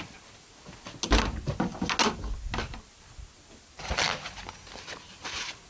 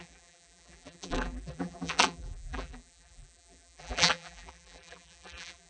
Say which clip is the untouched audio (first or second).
first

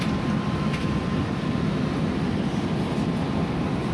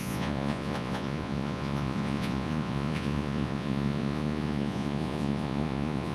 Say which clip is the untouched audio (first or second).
first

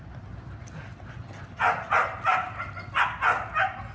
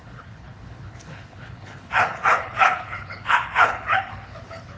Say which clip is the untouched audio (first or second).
first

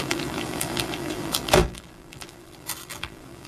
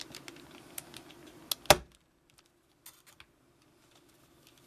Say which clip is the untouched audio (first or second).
second